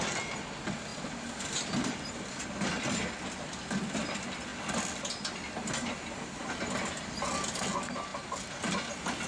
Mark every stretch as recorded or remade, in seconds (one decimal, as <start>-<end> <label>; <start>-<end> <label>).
0.0-9.3 recorded